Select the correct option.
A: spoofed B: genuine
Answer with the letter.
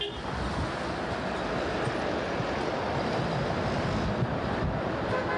B